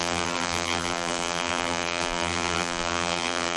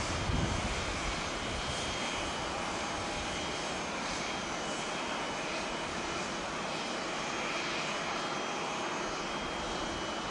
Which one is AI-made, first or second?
first